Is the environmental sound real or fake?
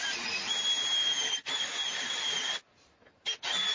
real